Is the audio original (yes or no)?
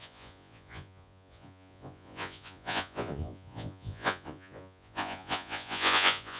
no